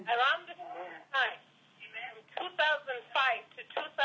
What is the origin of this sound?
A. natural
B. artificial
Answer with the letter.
A